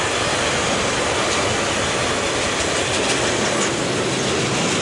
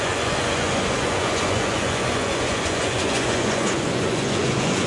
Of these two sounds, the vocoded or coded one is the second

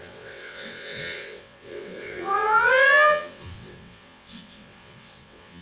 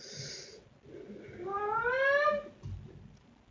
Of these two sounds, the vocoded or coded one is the first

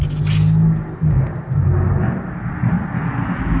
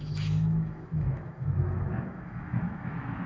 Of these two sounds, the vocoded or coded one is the second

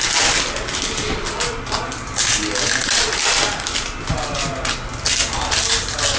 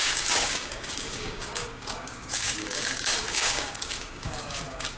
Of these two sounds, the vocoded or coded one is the second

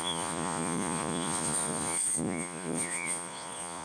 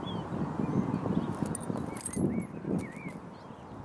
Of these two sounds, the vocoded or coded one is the first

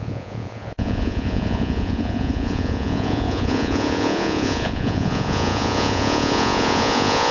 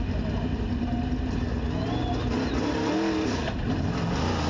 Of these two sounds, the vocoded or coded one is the first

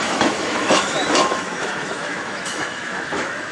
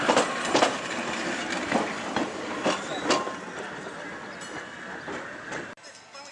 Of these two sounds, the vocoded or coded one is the first